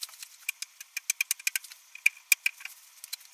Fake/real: real